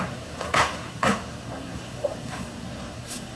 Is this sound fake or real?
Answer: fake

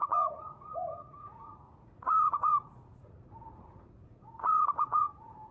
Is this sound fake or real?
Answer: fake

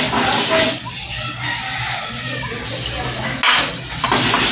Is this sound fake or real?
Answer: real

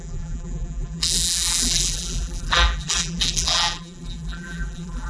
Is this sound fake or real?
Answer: fake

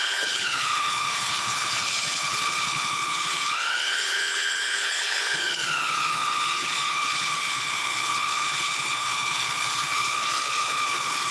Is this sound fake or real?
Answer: fake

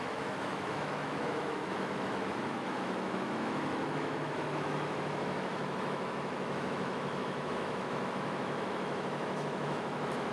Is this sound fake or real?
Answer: fake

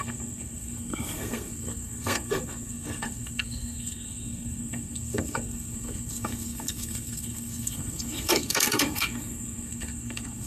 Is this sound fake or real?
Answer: fake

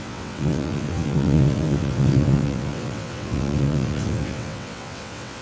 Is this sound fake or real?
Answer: fake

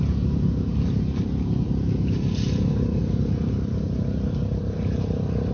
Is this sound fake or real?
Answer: real